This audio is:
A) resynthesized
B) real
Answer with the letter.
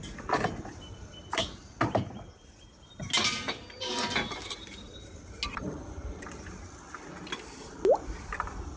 B